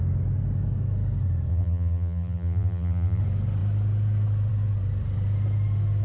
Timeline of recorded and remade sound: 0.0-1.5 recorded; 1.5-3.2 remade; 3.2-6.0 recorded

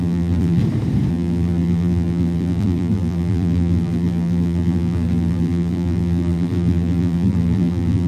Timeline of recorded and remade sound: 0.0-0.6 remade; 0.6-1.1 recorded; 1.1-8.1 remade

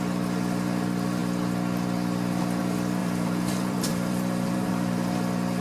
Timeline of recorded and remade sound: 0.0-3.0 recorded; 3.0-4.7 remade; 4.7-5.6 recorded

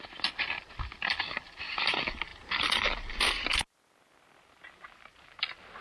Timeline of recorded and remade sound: 0.0-5.8 recorded